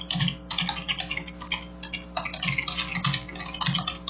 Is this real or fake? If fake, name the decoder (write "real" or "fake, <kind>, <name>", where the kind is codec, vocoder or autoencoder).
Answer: real